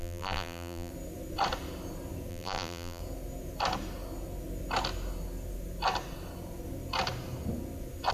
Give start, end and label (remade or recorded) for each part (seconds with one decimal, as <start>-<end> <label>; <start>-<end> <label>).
0.0-0.9 remade; 0.9-2.3 recorded; 2.3-3.0 remade; 3.0-8.1 recorded